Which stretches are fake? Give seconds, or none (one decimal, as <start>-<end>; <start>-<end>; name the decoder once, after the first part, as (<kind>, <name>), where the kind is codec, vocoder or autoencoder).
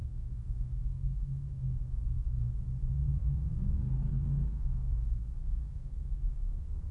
0.0-2.5 (codec, SNAC); 3.0-6.9